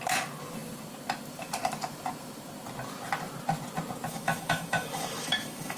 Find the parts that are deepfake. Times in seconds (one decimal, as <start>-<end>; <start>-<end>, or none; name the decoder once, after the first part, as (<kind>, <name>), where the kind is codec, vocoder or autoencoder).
4.1-5.8 (autoencoder, DAC-VAE)